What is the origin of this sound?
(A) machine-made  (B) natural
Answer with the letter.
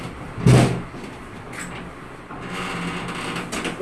B